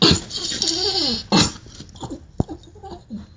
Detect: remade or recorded recorded